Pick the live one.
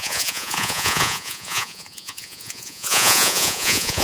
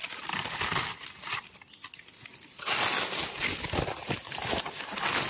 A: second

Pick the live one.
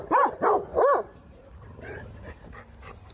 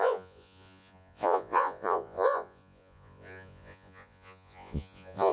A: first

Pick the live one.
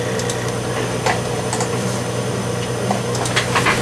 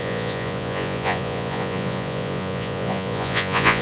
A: first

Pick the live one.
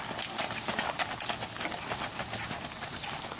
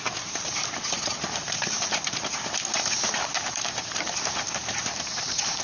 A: first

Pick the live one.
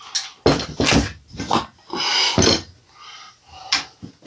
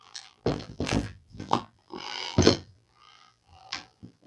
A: first